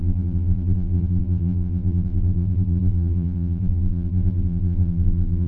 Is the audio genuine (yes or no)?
no